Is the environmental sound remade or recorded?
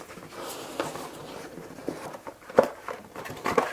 remade